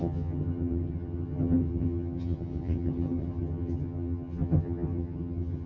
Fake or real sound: fake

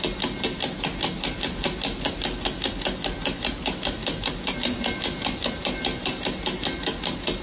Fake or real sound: real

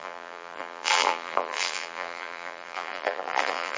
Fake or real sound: fake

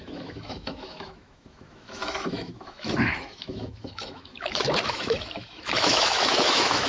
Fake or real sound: fake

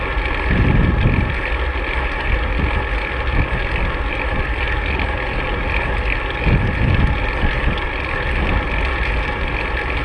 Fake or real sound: real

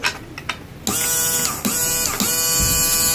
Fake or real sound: real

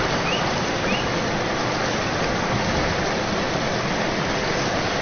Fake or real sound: real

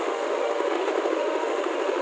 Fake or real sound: fake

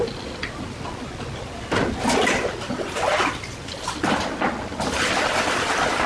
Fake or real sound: real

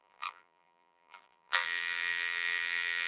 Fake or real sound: fake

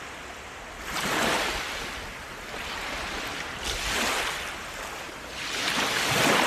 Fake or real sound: real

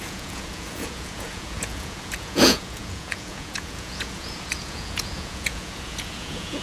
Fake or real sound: fake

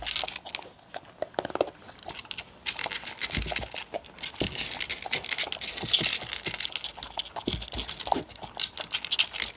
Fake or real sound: real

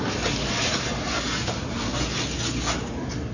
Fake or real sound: real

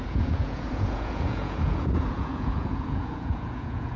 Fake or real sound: fake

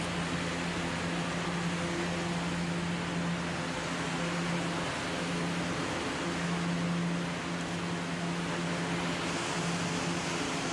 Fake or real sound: real